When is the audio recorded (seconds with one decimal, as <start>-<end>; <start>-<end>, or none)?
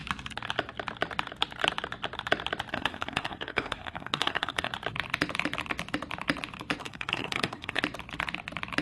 0.0-2.7; 4.7-6.8; 7.8-8.8